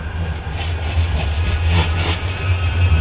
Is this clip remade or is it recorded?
recorded